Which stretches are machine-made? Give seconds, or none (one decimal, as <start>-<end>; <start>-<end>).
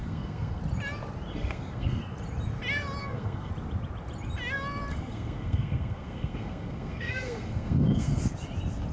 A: 0.0-0.6; 1.3-2.0; 3.0-3.5; 4.9-8.2